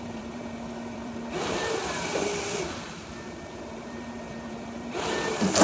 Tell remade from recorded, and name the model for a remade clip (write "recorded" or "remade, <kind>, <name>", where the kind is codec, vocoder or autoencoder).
remade, vocoder, BigVGAN v2